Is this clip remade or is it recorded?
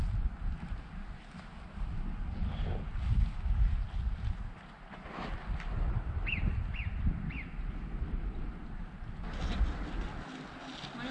recorded